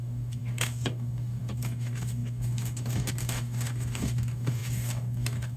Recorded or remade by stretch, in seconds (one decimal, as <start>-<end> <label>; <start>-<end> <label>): 0.0-5.6 remade